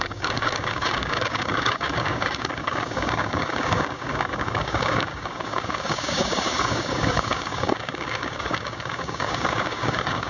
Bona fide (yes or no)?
no